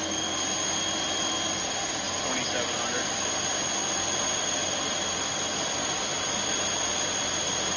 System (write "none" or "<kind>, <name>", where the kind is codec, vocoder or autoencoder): none